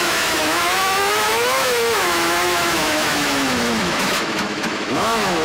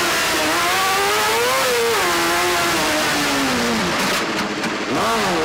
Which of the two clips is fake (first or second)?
first